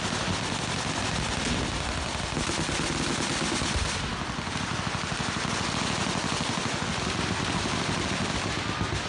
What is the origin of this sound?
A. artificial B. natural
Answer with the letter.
B